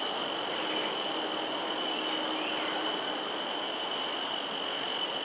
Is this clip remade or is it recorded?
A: recorded